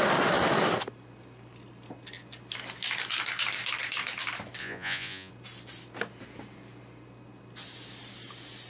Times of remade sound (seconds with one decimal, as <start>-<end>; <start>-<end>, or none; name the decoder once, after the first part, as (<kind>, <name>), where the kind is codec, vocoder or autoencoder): 4.6-5.3 (vocoder, Vocos)